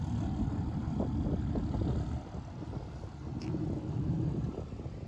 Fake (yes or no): no